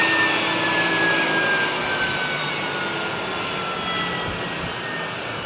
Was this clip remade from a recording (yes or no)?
no